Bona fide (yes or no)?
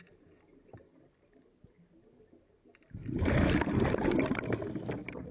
yes